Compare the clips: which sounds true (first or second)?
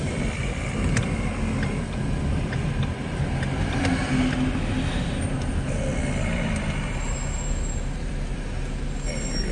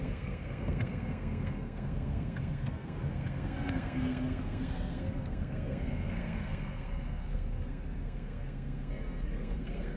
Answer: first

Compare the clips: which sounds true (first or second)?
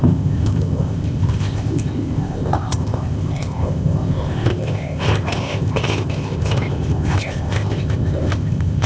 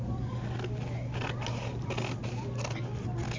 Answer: second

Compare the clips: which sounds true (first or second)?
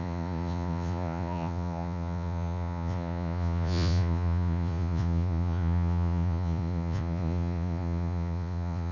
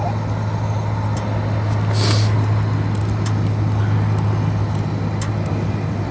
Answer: second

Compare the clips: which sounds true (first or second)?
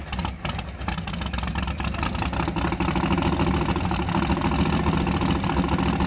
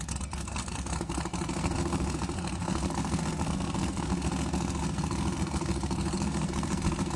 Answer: first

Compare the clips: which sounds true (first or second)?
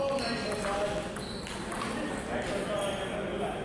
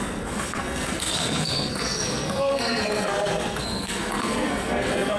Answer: first